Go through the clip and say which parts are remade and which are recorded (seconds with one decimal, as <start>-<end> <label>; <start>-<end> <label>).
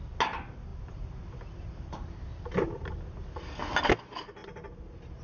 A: 0.0-5.2 recorded